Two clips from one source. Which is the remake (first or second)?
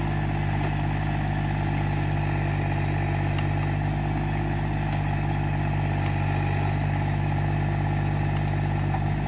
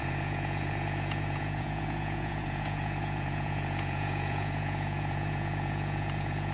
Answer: second